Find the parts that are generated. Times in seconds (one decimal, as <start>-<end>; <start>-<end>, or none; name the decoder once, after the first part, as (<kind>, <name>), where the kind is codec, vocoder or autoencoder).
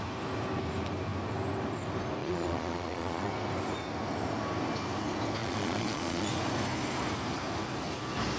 2.2-3.3 (vocoder, Vocos); 5.4-6.3